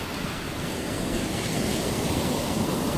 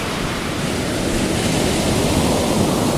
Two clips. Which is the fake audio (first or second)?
first